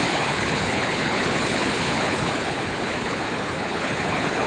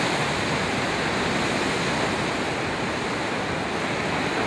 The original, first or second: second